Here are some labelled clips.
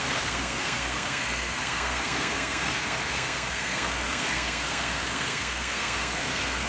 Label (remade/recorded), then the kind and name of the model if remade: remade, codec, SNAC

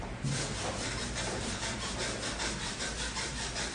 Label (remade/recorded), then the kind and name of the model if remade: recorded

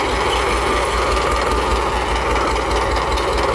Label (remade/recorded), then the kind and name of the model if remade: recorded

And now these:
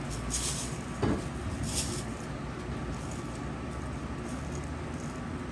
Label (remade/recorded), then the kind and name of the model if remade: recorded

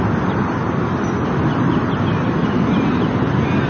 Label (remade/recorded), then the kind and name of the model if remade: recorded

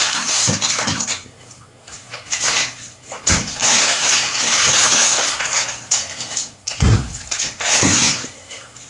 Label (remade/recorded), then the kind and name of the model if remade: remade, codec, SNAC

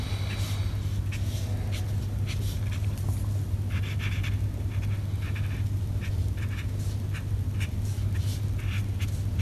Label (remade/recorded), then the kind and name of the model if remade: recorded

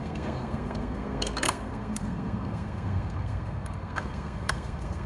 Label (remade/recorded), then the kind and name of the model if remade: remade, codec, SNAC